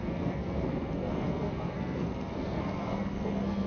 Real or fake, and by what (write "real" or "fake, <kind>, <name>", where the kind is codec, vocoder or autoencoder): fake, codec, SNAC